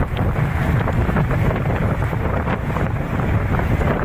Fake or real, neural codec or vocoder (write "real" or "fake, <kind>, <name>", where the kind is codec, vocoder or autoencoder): fake, vocoder, BigVGAN v2